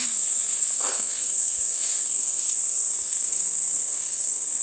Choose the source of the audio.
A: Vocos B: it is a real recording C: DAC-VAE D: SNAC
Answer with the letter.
D